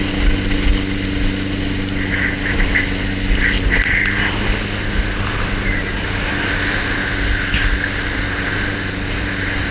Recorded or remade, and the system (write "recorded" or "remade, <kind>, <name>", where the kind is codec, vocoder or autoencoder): recorded